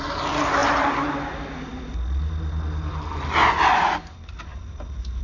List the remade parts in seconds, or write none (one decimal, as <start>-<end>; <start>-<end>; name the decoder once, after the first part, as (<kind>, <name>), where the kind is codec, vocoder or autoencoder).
0.6-1.1 (vocoder, BigVGAN v2); 4.5-5.2